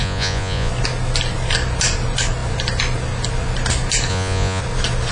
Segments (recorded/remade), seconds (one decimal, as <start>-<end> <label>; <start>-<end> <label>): 0.0-0.7 remade; 0.7-4.1 recorded; 4.1-4.6 remade; 4.6-5.1 recorded